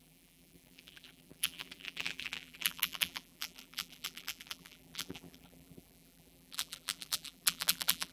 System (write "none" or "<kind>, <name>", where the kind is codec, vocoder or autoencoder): vocoder, BigVGAN v2